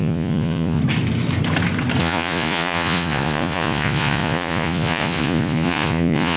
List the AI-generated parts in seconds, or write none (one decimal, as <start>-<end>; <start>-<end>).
0.0-0.8; 2.0-6.4